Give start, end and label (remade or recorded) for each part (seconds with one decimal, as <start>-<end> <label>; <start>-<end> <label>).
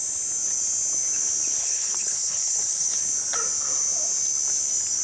0.0-1.6 recorded; 1.6-3.0 remade; 3.0-5.0 recorded